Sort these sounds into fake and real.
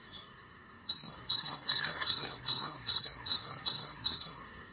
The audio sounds fake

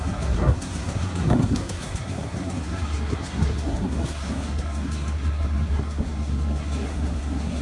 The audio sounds fake